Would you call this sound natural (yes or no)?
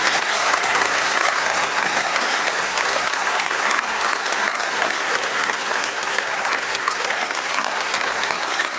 no